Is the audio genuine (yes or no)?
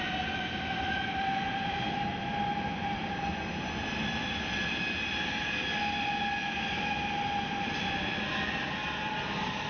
yes